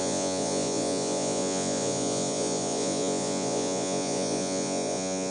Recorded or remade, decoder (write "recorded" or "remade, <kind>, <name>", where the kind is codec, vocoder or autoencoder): remade, vocoder, Vocos